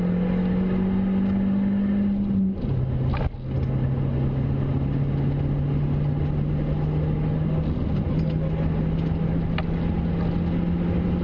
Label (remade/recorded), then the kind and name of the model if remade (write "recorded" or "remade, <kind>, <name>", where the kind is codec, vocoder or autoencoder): recorded